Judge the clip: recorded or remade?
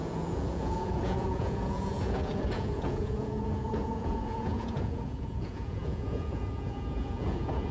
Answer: remade